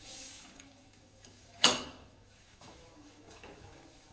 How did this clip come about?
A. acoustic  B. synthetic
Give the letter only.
B